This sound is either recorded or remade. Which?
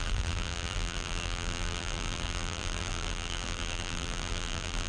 remade